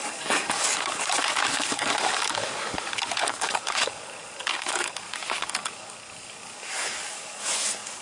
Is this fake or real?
fake